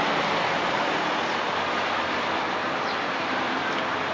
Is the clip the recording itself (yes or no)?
yes